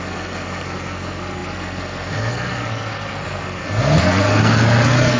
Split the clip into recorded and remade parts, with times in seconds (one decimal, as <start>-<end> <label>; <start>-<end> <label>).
0.0-5.2 remade